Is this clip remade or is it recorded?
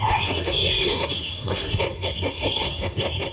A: remade